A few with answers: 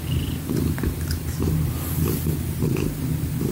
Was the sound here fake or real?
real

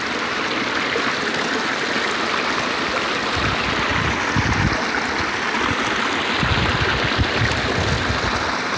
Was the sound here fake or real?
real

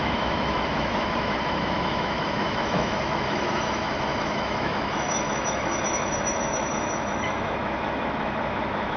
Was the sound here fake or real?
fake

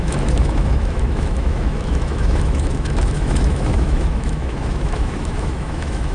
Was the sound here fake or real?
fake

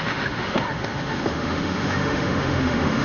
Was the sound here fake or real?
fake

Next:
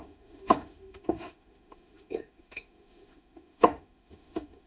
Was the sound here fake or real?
fake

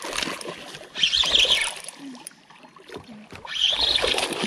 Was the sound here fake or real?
real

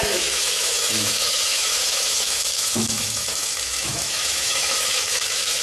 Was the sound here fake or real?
fake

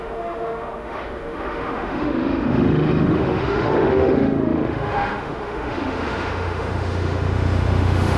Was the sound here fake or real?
fake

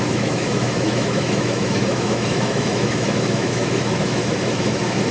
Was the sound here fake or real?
fake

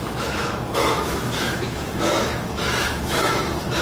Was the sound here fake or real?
fake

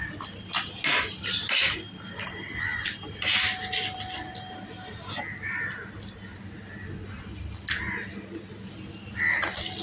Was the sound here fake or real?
real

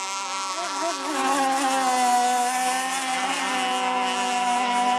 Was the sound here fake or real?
real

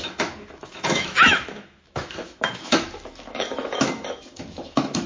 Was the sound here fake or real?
fake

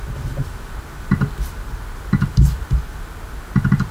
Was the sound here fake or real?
real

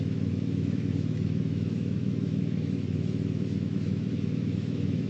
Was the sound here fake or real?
fake